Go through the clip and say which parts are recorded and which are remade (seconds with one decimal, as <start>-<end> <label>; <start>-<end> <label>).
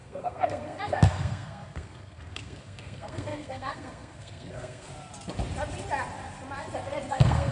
0.0-4.9 remade; 4.9-7.1 recorded; 7.1-7.5 remade